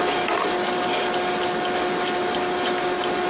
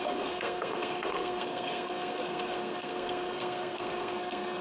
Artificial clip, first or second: second